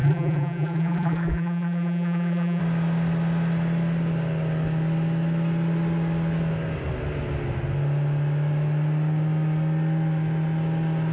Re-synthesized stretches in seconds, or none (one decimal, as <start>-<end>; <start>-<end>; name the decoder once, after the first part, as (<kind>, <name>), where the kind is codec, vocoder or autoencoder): 0.0-2.6 (vocoder, BigVGAN v2)